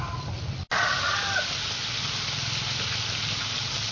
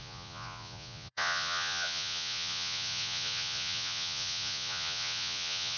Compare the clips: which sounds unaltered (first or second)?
first